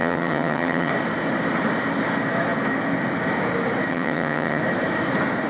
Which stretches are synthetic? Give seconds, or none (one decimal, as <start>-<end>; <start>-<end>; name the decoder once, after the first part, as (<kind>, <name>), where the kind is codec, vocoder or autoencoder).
0.0-0.9 (vocoder, HiFi-GAN); 3.9-4.6